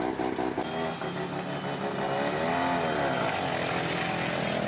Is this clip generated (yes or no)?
no